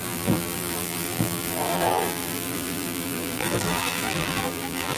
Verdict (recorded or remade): remade